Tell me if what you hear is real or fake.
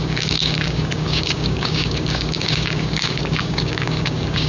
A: fake